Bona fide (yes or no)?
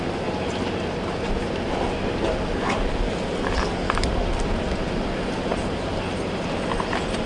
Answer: yes